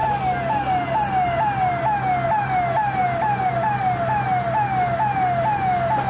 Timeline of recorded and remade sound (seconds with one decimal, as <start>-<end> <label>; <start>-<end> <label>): 0.0-6.1 recorded